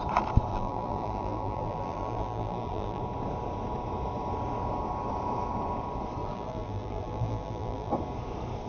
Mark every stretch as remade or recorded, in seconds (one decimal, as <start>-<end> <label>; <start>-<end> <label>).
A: 0.0-0.5 recorded; 0.5-3.0 remade; 3.0-6.2 recorded; 6.2-7.9 remade; 7.9-8.7 recorded

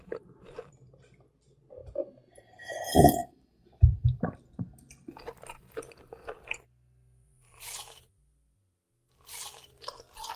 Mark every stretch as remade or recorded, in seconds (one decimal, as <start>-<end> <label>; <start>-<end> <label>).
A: 0.0-1.8 recorded; 1.8-2.6 remade; 2.6-3.2 recorded; 3.2-4.2 remade; 4.2-10.4 recorded

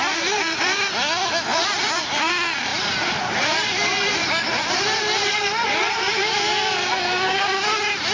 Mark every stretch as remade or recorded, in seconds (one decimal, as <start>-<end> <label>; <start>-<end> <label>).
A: 0.0-0.8 remade; 0.8-1.5 recorded; 1.5-2.3 remade; 2.3-2.7 recorded; 2.7-6.3 remade; 6.3-8.1 recorded

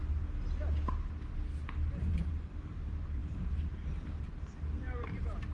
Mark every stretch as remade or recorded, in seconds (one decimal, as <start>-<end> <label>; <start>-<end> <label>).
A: 0.0-2.1 recorded; 2.1-5.5 remade

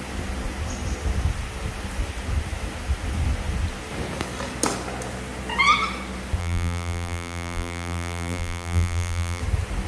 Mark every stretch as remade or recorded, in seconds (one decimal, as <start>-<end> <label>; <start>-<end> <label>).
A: 0.0-6.4 recorded; 6.4-9.4 remade; 9.4-9.9 recorded